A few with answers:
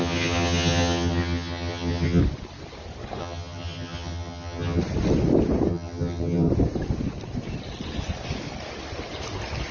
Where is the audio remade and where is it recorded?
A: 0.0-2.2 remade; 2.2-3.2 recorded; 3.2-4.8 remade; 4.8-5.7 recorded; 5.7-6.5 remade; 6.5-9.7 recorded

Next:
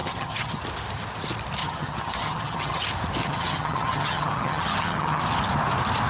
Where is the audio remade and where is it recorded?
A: 0.0-0.6 remade; 0.6-1.6 recorded; 1.6-2.8 remade; 2.8-3.2 recorded; 3.2-5.2 remade; 5.2-6.1 recorded

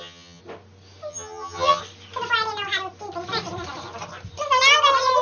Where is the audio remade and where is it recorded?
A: 0.0-0.4 remade; 0.4-1.1 recorded; 1.1-1.8 remade; 1.8-5.2 recorded

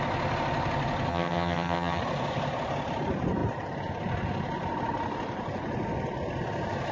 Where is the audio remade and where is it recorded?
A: 0.0-1.1 recorded; 1.1-2.0 remade; 2.0-6.9 recorded

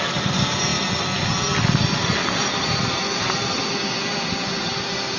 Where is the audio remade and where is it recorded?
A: 0.0-5.2 recorded

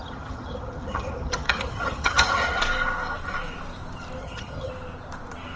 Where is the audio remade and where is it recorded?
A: 0.0-2.6 remade; 2.6-4.2 recorded; 4.2-4.7 remade; 4.7-5.6 recorded

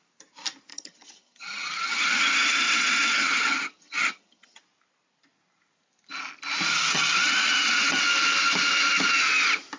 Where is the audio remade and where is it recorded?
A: 0.0-0.7 recorded; 0.7-4.6 remade; 4.6-6.7 recorded; 6.7-8.0 remade; 8.0-9.8 recorded